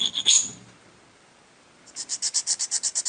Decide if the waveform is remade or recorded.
recorded